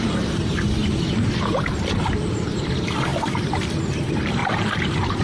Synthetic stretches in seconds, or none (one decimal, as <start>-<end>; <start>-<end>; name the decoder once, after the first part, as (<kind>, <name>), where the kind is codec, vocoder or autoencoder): 0.0-0.8 (vocoder, BigVGAN v2); 1.5-5.2